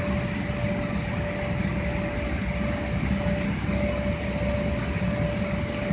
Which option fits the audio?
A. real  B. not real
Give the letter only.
A